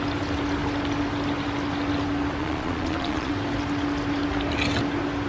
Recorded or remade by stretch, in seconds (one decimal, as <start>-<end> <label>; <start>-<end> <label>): 0.0-2.4 recorded; 2.4-3.3 remade; 3.3-5.3 recorded